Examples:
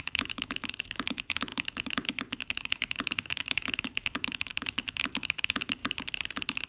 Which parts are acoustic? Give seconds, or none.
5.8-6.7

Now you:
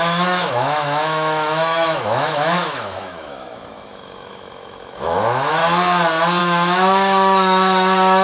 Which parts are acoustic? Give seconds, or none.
5.6-6.4

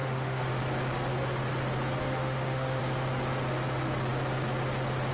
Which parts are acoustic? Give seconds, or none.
0.6-2.0; 2.8-5.1

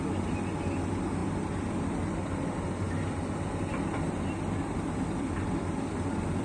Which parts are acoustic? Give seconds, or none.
0.0-6.4

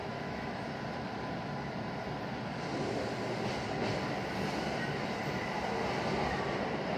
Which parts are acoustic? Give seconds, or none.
0.6-7.0

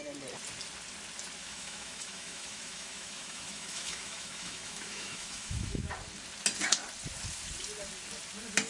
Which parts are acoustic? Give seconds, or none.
0.0-1.4; 5.9-8.7